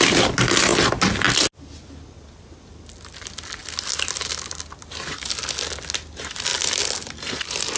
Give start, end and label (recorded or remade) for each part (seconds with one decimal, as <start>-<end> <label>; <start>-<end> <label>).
0.0-7.8 recorded